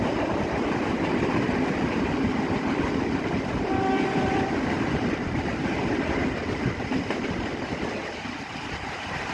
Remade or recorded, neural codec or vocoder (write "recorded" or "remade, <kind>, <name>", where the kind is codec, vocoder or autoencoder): remade, vocoder, BigVGAN v2